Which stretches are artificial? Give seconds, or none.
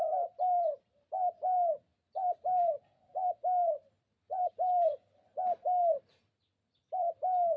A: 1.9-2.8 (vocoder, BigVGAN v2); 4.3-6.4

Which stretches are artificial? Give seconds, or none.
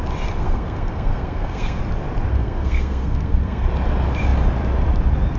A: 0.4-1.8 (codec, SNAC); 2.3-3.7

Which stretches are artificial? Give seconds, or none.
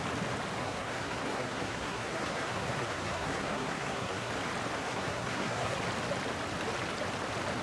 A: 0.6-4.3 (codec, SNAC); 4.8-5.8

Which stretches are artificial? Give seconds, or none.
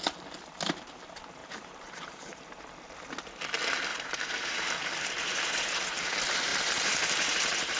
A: 1.4-2.6 (vocoder, BigVGAN v2); 3.9-6.1; 6.5-7.8